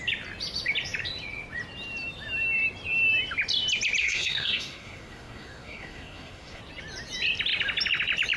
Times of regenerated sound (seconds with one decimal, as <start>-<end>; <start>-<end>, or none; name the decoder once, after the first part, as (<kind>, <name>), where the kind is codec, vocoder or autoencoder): 4.0-6.6 (codec, SNAC)